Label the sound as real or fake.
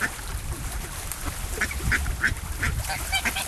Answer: fake